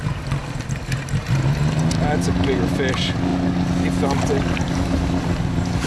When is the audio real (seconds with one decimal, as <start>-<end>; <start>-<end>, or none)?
0.0-5.9